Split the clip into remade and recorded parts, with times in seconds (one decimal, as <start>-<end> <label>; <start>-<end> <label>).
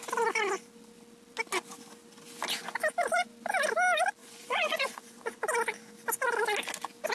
0.0-4.2 recorded; 4.2-5.4 remade; 5.4-7.1 recorded